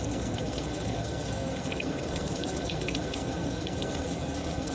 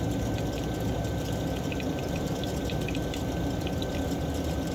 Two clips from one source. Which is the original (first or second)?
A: second